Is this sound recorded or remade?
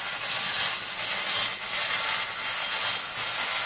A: recorded